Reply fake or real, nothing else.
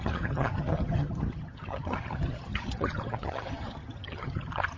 fake